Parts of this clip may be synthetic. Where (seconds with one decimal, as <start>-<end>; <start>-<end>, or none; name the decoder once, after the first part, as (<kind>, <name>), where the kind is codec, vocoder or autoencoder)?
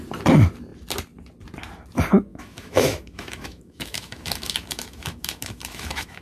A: 2.3-6.2 (autoencoder, DAC-VAE)